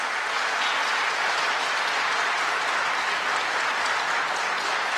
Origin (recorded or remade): recorded